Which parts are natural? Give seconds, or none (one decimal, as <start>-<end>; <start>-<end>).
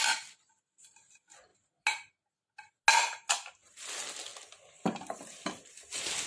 0.0-6.3